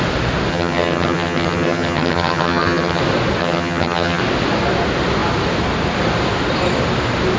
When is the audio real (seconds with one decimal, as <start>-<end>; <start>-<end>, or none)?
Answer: 0.0-0.5; 3.0-3.4; 4.2-7.4